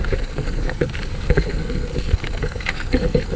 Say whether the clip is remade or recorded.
remade